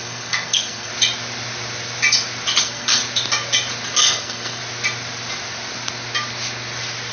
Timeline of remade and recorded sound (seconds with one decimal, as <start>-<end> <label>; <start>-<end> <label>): 0.0-0.9 remade; 0.9-2.6 recorded; 2.6-3.0 remade; 3.0-4.0 recorded; 4.0-4.6 remade; 4.6-7.1 recorded